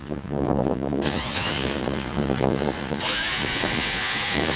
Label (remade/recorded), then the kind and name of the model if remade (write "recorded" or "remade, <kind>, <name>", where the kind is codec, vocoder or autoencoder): remade, vocoder, Vocos